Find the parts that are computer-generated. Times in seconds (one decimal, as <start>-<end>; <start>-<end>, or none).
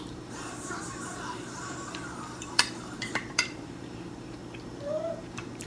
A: 0.0-4.4; 5.2-5.7